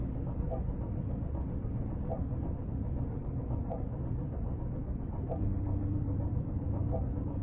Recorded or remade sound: remade